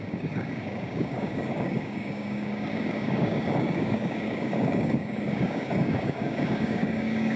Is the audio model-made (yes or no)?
yes